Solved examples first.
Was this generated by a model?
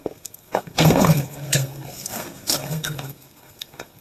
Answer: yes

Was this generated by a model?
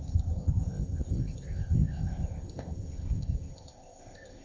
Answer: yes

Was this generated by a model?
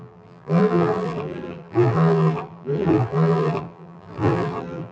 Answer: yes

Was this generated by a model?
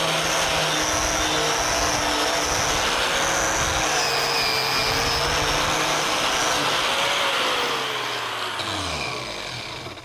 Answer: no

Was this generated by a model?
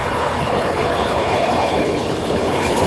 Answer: yes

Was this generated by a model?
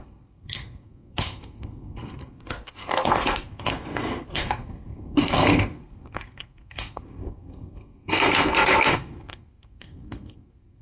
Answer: yes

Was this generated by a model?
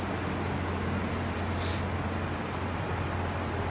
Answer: no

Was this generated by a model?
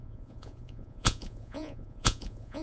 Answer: yes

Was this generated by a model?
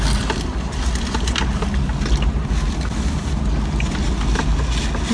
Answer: no